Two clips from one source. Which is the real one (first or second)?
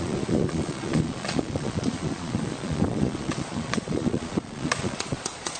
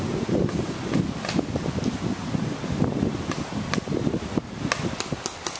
second